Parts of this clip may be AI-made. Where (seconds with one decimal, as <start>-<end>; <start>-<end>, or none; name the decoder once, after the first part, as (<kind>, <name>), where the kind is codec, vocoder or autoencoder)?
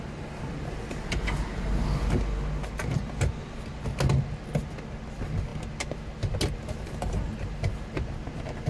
none